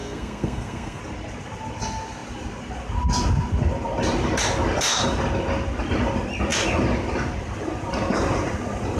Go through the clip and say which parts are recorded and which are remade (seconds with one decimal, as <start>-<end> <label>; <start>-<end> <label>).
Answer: 0.0-1.0 remade; 1.0-9.0 recorded